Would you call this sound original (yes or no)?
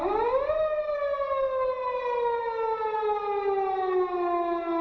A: yes